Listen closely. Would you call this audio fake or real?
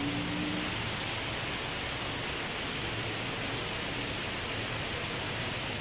real